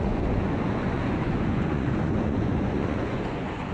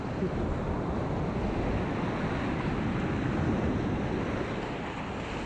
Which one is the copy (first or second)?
first